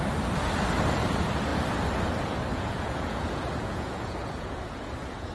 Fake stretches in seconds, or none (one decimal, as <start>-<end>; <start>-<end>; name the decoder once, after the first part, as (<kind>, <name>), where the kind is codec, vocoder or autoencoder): 2.5-5.3 (vocoder, Vocos)